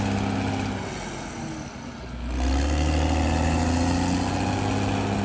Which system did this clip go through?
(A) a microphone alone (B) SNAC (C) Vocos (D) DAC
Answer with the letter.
A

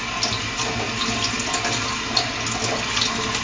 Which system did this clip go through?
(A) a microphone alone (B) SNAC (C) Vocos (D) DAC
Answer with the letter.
A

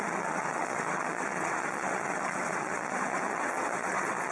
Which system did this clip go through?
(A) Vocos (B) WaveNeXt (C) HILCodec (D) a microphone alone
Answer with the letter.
B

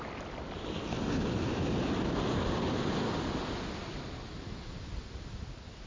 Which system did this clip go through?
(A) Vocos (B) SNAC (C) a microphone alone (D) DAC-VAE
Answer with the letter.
C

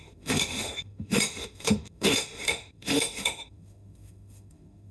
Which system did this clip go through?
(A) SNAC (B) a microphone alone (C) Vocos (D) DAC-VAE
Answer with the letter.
D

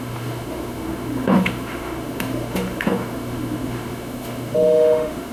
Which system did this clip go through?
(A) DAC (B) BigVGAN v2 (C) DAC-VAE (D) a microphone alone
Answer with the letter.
C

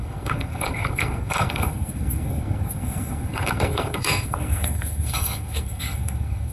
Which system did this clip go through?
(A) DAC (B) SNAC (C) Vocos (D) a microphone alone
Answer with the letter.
B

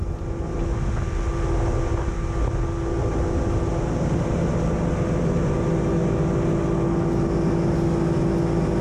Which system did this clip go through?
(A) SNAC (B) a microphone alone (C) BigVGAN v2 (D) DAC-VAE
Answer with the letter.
B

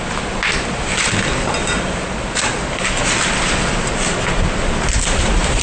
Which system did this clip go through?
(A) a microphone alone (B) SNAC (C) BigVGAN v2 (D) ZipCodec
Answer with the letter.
A